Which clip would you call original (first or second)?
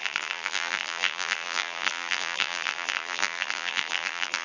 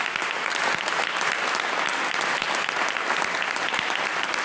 second